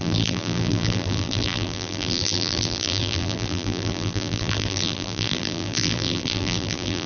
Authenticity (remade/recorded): remade